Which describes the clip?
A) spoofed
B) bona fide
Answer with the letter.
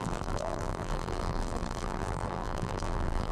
A